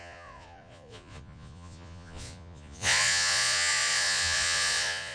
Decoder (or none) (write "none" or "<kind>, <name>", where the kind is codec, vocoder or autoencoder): vocoder, Vocos